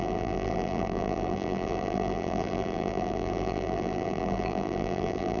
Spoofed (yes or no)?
yes